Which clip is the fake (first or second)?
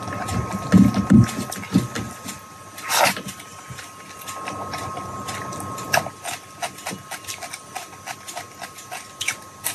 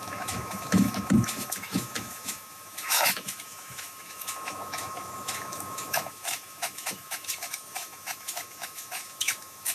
second